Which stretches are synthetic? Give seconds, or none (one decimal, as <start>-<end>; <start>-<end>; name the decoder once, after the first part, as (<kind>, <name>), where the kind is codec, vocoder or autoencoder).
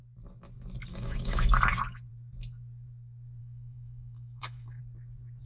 0.9-1.5 (autoencoder, DAC-VAE); 3.4-4.8